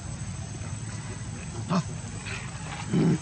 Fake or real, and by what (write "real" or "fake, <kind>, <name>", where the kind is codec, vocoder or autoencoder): real